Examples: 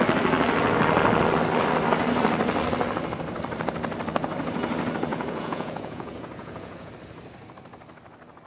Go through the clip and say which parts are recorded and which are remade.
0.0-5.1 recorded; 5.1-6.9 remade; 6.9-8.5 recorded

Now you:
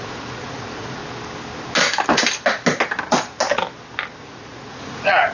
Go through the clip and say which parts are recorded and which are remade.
0.0-1.0 remade; 1.0-4.2 recorded; 4.2-5.3 remade

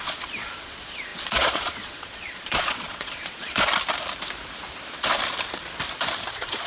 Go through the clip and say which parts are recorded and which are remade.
0.0-3.7 remade; 3.7-6.3 recorded; 6.3-6.7 remade

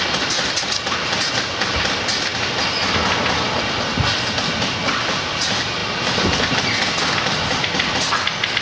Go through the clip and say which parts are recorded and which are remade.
0.0-8.6 recorded

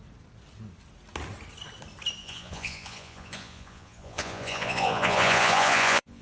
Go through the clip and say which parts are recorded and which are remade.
0.0-2.2 recorded; 2.2-6.2 remade

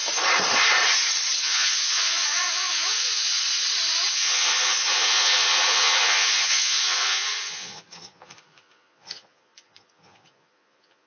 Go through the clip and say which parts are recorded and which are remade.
0.0-1.4 recorded; 1.4-3.3 remade; 3.3-4.1 recorded; 4.1-11.1 remade